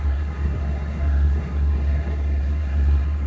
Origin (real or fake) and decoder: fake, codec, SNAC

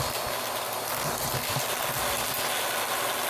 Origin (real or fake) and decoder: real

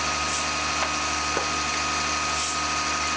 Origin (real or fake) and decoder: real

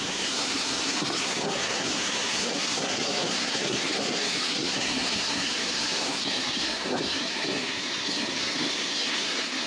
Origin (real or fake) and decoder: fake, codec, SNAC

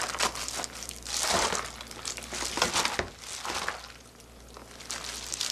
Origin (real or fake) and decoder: real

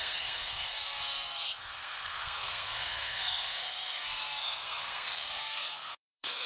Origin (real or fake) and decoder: fake, codec, SNAC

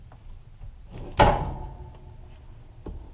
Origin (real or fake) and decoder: real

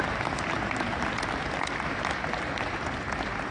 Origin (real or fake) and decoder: real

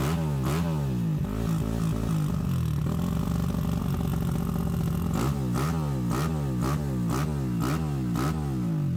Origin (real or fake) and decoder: real